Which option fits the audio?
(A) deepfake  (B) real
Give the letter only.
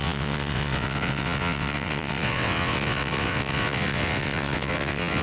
A